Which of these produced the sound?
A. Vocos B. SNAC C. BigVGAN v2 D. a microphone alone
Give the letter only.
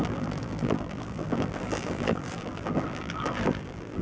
C